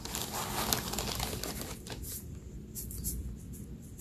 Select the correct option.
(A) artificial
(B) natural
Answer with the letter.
B